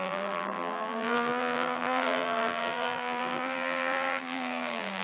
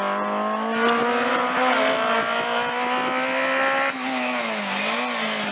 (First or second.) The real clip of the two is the second